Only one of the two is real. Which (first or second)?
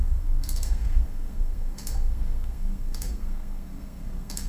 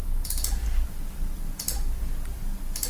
second